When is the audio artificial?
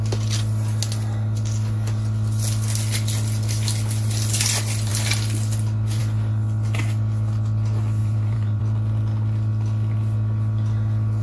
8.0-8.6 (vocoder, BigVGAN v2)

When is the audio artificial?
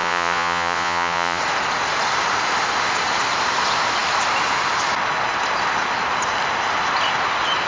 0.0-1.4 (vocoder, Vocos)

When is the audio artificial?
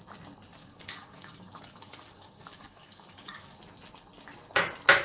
0.6-3.6 (codec, DAC)